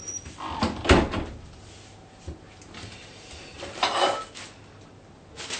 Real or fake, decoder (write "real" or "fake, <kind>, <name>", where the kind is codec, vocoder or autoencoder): real